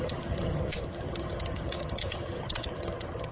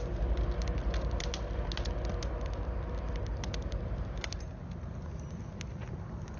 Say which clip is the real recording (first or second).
second